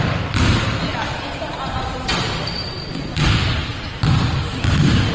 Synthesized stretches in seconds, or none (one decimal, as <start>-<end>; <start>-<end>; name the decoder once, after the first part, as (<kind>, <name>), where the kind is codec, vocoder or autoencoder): 0.9-2.9 (vocoder, BigVGAN v2); 3.7-4.4